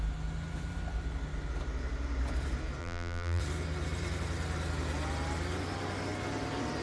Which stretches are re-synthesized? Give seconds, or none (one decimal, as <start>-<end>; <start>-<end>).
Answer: 2.8-3.4